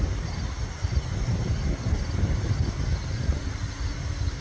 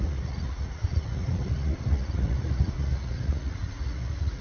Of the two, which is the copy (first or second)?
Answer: second